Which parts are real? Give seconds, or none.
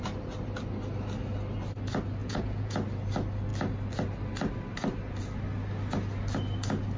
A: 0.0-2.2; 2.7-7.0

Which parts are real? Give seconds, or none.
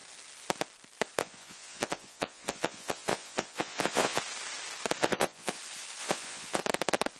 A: 0.0-1.2; 4.2-5.0; 5.6-6.0; 6.6-7.2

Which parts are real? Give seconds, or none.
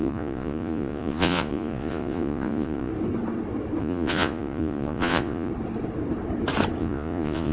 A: 2.9-3.8; 5.5-6.8